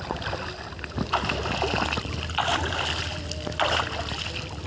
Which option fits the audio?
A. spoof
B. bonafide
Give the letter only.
B